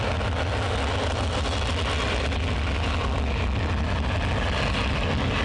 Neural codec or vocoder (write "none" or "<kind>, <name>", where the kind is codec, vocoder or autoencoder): none